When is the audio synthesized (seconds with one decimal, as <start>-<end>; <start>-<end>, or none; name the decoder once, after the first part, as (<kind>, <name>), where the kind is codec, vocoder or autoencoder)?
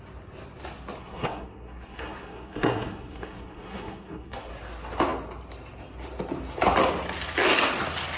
1.0-4.5 (codec, SNAC)